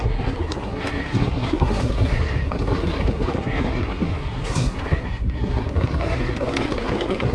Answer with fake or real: fake